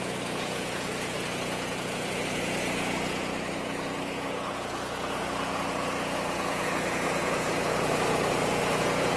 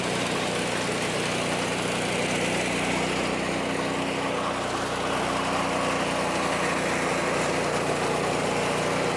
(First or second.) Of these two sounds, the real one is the second